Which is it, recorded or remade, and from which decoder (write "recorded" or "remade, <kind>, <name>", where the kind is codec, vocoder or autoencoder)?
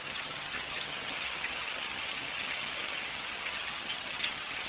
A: remade, vocoder, HiFi-GAN